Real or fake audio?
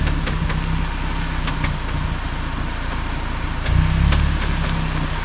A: real